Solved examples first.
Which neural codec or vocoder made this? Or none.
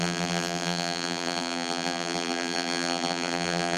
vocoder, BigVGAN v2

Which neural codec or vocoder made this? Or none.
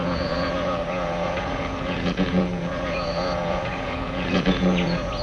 vocoder, Vocos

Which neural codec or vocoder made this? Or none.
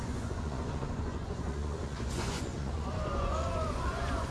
vocoder, Vocos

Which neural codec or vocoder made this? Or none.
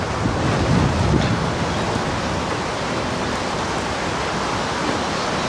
none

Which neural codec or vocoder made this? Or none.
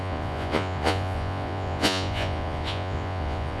vocoder, Vocos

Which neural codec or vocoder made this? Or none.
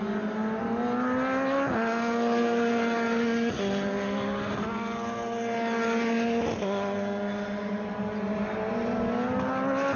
none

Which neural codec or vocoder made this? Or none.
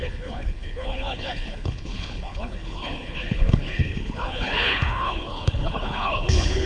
codec, HILCodec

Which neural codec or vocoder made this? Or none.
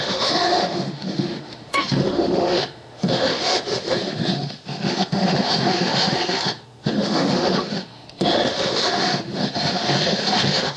autoencoder, DAC-VAE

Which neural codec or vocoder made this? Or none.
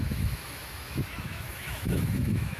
autoencoder, DAC-VAE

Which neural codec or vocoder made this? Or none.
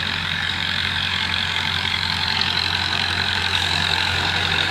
codec, DAC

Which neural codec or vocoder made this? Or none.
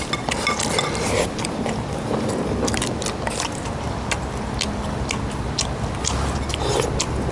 none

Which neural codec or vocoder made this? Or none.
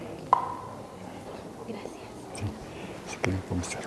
none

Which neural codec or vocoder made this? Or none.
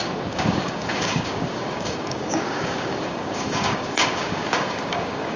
codec, DAC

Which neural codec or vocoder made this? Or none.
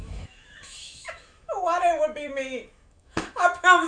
autoencoder, DAC-VAE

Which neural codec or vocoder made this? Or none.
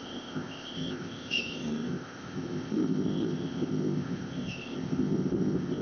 codec, ZipCodec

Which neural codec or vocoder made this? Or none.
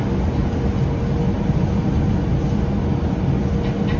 none